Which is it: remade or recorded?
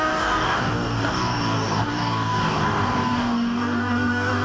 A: remade